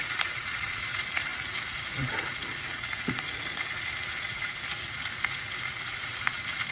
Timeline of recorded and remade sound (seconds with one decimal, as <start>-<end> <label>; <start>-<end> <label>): 0.0-6.7 remade